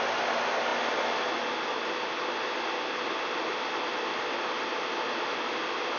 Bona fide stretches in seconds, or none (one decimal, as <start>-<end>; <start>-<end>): 0.0-6.0